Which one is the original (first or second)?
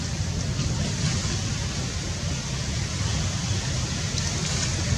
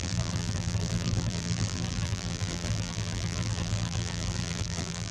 first